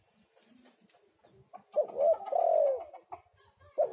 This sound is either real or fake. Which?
real